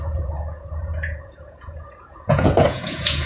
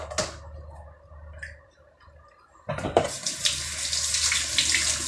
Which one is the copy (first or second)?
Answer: first